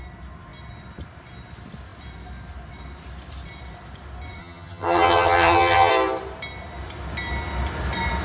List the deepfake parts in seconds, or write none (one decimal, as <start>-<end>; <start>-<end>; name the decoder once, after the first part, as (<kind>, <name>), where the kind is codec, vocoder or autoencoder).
4.4-5.9 (vocoder, HiFi-GAN)